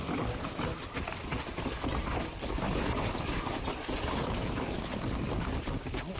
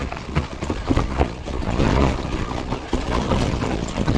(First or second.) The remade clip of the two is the second